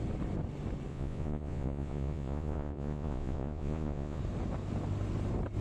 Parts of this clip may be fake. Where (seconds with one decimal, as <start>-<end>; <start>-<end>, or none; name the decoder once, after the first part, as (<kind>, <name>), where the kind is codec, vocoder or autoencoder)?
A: 0.9-4.2 (vocoder, Vocos)